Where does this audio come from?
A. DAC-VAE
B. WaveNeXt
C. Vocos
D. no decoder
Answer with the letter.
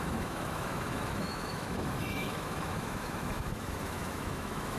A